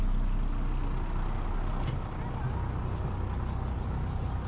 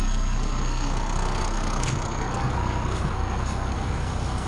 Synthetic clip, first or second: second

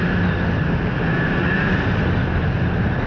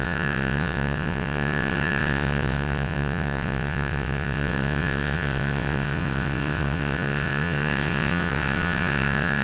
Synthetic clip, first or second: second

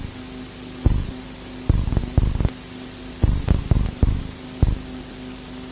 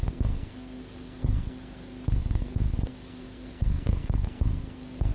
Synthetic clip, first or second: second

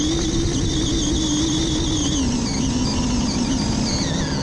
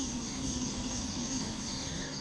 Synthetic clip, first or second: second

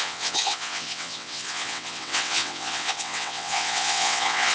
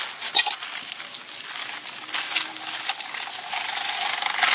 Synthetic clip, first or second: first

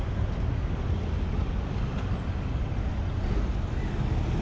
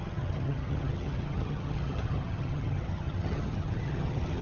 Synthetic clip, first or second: second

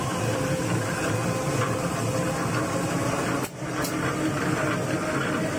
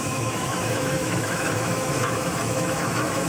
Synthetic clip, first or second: second